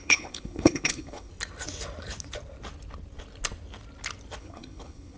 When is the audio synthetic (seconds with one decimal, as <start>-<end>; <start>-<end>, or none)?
0.0-1.3; 4.4-5.2